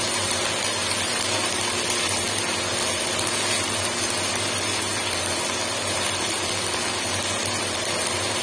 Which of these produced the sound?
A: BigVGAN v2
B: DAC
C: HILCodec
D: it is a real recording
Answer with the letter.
D